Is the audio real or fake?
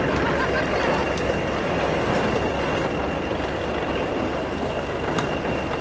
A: real